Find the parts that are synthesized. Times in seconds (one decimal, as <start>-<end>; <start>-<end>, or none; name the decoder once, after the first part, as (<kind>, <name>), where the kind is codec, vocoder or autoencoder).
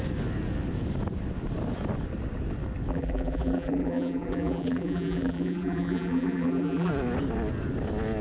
2.9-6.9 (vocoder, BigVGAN v2)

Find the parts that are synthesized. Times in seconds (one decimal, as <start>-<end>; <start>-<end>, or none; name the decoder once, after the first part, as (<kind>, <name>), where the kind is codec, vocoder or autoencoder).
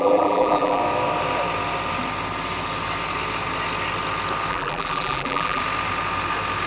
0.0-0.8 (vocoder, BigVGAN v2); 4.5-5.6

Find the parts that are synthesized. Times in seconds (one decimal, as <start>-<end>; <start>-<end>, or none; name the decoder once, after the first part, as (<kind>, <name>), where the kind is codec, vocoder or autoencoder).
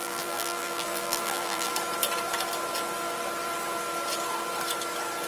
0.0-1.7 (vocoder, BigVGAN v2)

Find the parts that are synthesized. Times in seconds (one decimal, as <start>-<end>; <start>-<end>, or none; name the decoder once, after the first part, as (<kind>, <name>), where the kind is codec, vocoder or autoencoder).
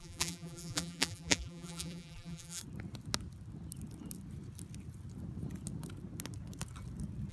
0.0-2.6 (vocoder, BigVGAN v2)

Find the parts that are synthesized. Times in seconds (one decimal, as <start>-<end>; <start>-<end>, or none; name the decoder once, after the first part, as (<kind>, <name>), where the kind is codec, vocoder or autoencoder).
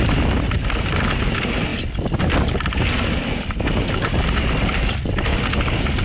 none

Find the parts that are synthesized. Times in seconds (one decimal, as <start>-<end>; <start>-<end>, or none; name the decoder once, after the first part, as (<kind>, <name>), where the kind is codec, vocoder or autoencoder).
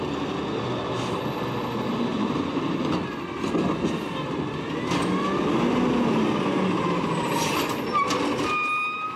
2.1-2.8 (vocoder, BigVGAN v2)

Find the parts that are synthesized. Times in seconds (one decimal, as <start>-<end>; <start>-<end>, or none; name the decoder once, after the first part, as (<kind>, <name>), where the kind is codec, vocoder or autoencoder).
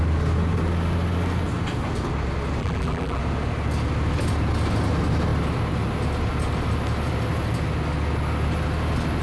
2.6-3.2 (vocoder, BigVGAN v2)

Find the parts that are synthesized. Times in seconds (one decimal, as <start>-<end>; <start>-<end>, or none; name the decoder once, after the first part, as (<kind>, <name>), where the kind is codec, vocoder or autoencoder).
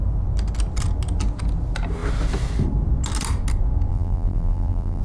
3.9-5.0 (vocoder, BigVGAN v2)